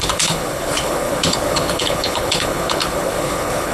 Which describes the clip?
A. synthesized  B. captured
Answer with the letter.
A